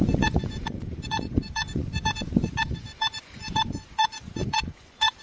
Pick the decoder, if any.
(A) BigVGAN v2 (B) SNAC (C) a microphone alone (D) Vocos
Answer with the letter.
D